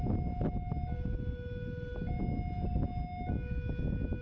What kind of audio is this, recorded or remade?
recorded